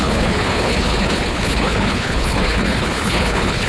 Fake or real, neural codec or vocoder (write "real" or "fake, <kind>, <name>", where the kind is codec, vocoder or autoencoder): fake, codec, HILCodec